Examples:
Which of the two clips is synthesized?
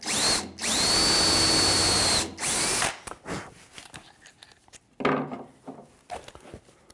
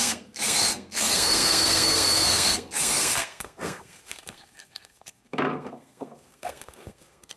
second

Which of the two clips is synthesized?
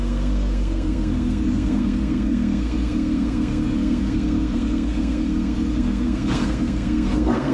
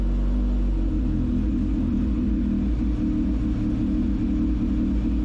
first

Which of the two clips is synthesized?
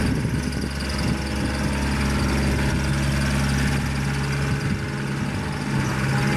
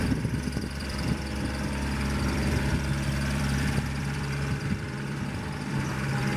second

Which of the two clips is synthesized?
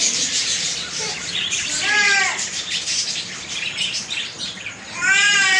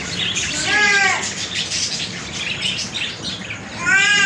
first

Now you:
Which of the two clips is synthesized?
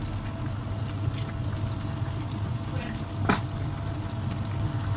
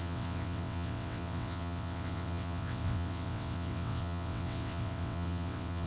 second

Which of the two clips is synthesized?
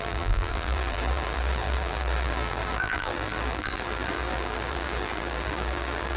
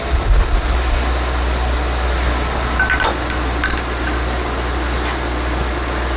first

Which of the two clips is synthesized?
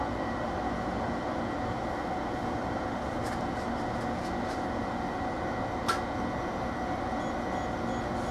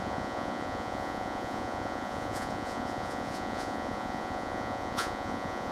second